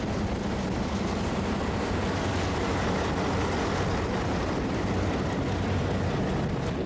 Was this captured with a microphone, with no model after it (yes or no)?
yes